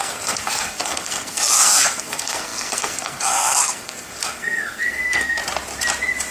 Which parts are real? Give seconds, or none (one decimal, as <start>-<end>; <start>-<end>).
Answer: 5.4-6.3